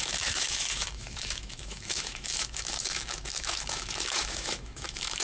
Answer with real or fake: fake